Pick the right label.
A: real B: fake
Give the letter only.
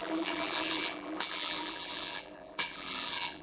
B